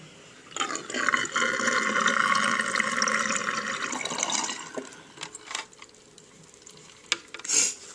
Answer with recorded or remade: recorded